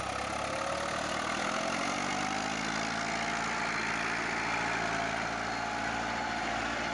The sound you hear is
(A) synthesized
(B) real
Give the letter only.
B